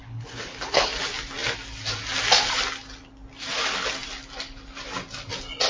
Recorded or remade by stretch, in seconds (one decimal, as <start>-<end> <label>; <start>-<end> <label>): 0.0-0.9 remade; 0.9-5.7 recorded